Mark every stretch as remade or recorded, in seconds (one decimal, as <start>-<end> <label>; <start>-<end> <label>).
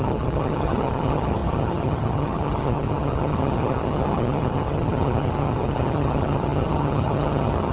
0.0-7.7 remade